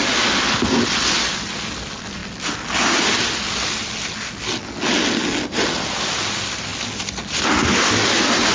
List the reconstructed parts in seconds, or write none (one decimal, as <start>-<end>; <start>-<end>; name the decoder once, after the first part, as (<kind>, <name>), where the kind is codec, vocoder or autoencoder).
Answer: 1.5-2.2 (vocoder, BigVGAN v2); 5.4-6.7; 7.9-8.5